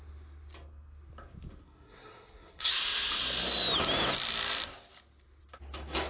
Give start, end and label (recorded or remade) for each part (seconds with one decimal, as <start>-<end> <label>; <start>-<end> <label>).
0.0-1.6 recorded; 1.6-2.7 remade; 2.7-6.1 recorded